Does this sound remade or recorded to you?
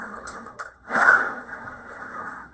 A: remade